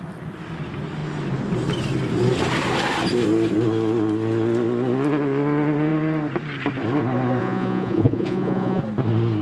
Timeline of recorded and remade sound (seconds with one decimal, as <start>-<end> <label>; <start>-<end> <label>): 0.0-7.4 recorded; 7.4-8.8 remade; 8.8-9.4 recorded